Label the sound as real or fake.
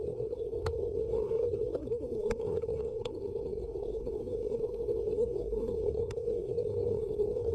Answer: fake